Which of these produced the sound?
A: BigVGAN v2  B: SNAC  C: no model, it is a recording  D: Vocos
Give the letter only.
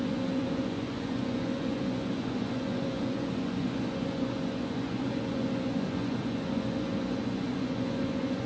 D